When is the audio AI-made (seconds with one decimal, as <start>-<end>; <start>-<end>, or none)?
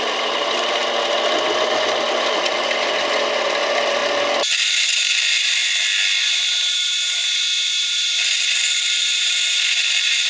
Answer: 0.0-0.8; 1.7-5.6; 6.2-10.3